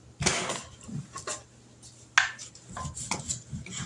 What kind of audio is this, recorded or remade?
recorded